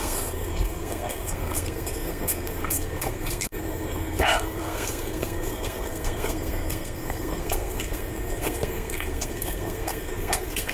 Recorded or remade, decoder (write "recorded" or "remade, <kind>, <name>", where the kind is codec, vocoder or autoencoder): remade, codec, SNAC